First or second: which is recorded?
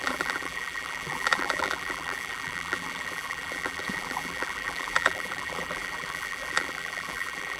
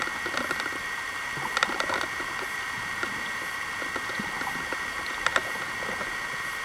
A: second